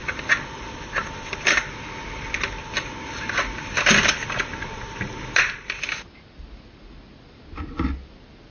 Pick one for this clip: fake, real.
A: real